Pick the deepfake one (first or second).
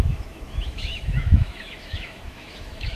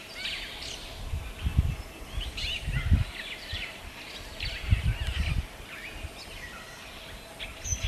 first